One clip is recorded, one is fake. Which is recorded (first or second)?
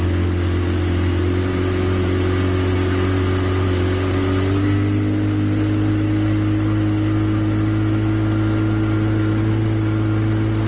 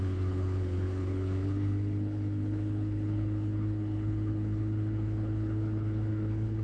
first